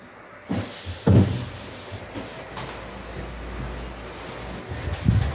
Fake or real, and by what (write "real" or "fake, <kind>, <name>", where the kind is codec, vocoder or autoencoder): real